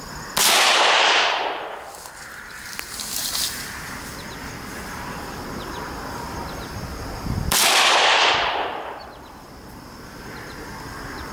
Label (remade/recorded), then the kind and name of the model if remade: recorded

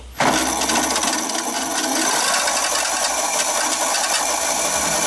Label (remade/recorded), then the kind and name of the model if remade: recorded